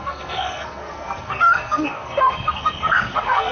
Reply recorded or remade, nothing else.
remade